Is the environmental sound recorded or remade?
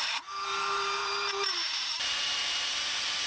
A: remade